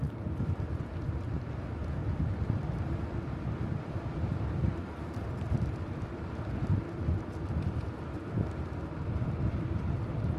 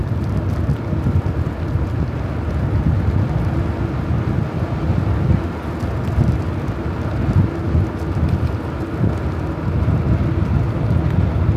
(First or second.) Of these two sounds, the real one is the second